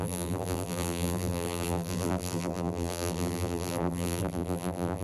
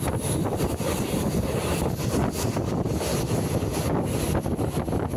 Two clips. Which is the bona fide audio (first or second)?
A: second